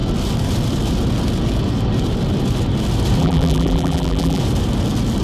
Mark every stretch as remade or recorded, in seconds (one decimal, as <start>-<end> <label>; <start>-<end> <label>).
0.0-3.2 recorded; 3.2-4.4 remade; 4.4-5.2 recorded